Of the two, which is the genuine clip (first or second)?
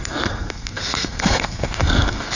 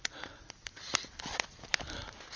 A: second